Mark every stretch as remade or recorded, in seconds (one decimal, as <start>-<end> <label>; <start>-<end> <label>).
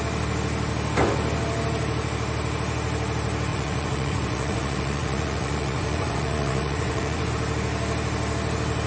0.0-3.5 recorded; 3.5-7.3 remade; 7.3-8.9 recorded